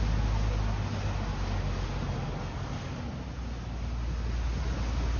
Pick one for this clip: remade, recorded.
recorded